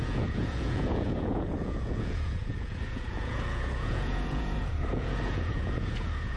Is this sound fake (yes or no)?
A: yes